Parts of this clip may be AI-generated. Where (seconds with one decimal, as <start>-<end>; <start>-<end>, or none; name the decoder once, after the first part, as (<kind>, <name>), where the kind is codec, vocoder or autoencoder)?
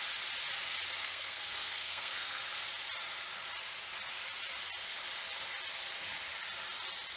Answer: 1.0-2.4 (codec, SNAC)